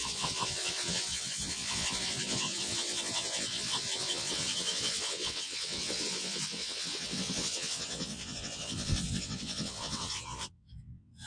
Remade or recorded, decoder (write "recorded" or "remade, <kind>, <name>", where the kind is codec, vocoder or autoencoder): remade, vocoder, WaveNeXt